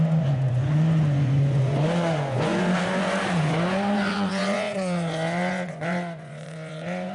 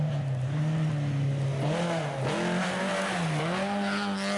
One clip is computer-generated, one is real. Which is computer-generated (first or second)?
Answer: first